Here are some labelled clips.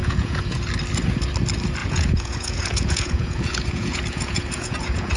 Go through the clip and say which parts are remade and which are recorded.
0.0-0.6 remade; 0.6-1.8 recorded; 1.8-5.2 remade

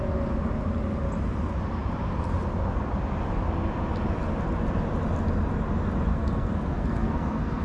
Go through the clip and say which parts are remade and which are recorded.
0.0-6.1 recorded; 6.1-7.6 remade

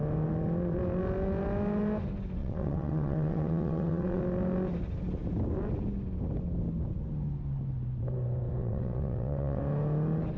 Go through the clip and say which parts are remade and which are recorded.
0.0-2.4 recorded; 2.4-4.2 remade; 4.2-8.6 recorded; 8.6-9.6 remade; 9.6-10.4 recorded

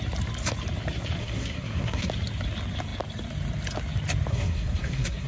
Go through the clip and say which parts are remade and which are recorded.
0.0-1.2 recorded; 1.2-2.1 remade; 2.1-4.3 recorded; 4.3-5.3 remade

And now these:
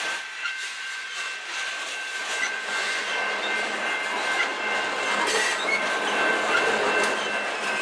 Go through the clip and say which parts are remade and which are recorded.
0.0-0.6 recorded; 0.6-1.2 remade; 1.2-2.2 recorded; 2.2-3.1 remade; 3.1-7.8 recorded

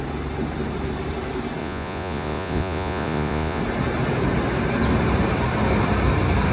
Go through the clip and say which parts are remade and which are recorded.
0.0-1.6 recorded; 1.6-3.6 remade; 3.6-6.5 recorded